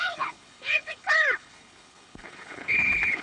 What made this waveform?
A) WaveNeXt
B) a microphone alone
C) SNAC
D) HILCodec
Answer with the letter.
D